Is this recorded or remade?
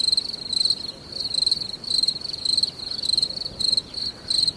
recorded